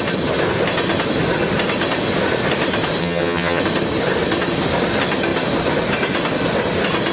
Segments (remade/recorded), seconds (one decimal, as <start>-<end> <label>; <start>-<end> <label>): 0.0-3.0 recorded; 3.0-3.6 remade; 3.6-7.1 recorded